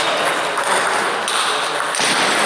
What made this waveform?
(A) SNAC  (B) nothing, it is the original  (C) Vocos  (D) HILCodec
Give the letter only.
B